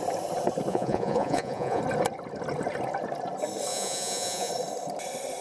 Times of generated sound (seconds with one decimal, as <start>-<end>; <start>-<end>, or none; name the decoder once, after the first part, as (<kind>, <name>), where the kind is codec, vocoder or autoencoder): 0.7-1.8 (vocoder, Vocos); 3.7-4.5